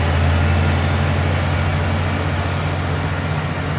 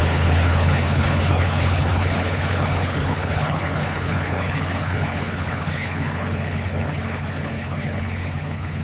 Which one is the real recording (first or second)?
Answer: first